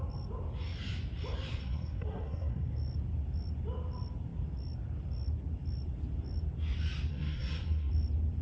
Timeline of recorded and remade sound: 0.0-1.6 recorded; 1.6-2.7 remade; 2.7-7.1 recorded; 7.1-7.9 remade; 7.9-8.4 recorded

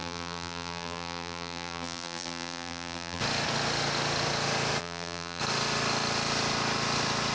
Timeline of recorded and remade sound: 0.0-3.2 remade; 3.2-4.8 recorded; 4.8-5.4 remade; 5.4-7.3 recorded

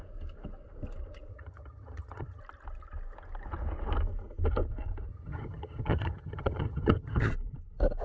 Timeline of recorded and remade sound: 0.0-1.3 recorded; 1.3-2.4 remade; 2.4-5.1 recorded; 5.1-7.3 remade; 7.3-8.0 recorded